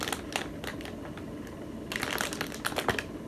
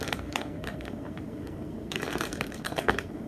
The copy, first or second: second